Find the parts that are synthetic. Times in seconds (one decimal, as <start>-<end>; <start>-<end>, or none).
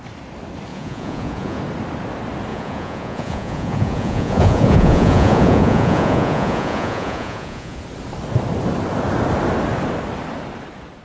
0.7-1.6; 2.5-7.8